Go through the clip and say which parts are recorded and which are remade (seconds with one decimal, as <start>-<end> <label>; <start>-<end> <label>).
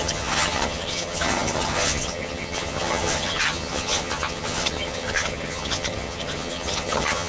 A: 0.0-7.3 remade